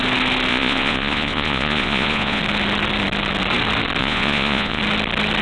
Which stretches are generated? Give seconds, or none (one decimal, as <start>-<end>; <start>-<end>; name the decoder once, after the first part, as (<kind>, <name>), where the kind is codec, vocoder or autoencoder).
0.5-2.4 (vocoder, Vocos); 4.0-4.8